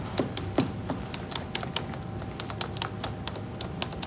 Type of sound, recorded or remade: recorded